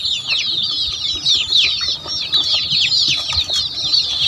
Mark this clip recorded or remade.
recorded